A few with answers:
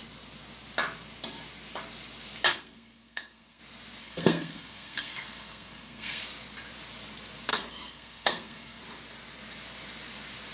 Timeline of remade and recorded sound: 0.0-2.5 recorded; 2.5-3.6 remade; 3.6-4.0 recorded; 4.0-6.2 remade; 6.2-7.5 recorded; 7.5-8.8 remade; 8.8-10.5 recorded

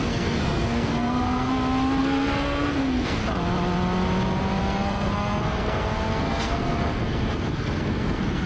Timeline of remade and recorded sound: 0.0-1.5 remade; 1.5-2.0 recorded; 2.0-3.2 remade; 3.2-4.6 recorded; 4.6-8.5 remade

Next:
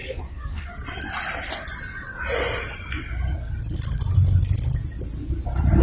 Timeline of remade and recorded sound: 0.0-0.7 remade; 0.7-5.8 recorded

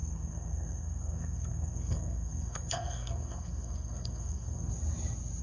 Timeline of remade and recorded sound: 0.0-4.7 remade; 4.7-5.4 recorded

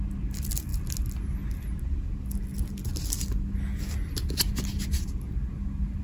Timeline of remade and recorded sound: 0.0-6.0 recorded